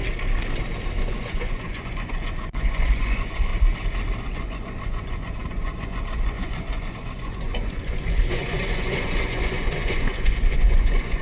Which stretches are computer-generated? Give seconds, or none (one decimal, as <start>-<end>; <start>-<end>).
1.0-3.5; 4.2-11.2